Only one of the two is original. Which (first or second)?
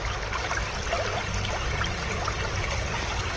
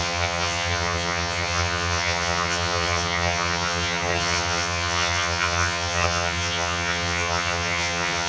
first